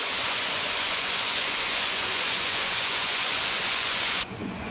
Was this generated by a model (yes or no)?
yes